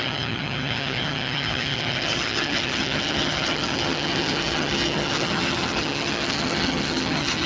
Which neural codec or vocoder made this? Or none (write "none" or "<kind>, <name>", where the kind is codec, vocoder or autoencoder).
vocoder, HiFi-GAN